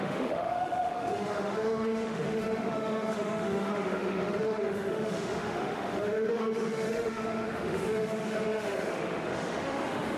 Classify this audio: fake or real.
fake